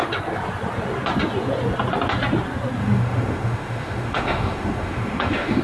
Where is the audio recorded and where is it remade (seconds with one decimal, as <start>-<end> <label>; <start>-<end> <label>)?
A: 0.0-2.8 recorded; 2.8-5.6 remade